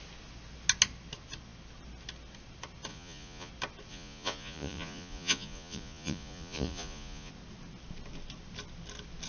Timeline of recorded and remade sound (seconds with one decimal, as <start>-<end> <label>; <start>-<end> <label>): 0.0-2.9 recorded; 2.9-3.5 remade; 3.5-3.9 recorded; 3.9-7.3 remade; 7.3-9.3 recorded